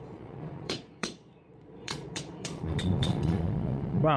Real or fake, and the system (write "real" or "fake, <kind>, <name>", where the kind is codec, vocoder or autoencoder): fake, vocoder, Vocos